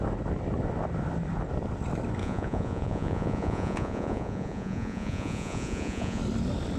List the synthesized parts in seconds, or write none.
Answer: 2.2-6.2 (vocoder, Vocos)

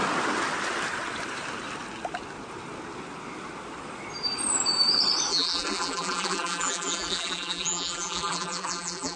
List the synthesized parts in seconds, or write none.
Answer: 5.3-9.2 (vocoder, BigVGAN v2)

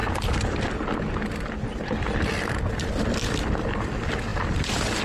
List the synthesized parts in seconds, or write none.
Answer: none

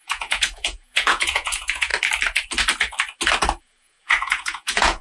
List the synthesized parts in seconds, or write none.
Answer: 0.0-1.9 (vocoder, Vocos); 3.6-5.0